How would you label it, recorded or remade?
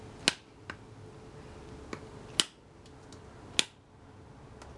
recorded